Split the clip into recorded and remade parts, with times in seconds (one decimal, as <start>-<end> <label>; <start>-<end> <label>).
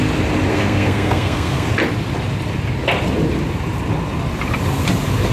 0.0-0.5 recorded; 0.5-1.7 remade; 1.7-5.3 recorded